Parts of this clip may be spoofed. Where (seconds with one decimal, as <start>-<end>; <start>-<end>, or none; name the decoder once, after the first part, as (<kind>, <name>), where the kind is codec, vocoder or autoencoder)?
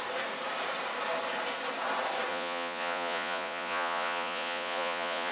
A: 2.3-5.3 (vocoder, Vocos)